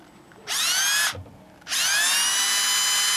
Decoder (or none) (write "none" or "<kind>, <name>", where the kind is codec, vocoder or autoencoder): none